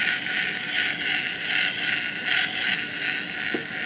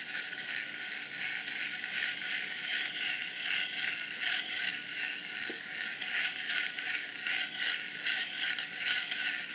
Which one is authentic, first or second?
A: first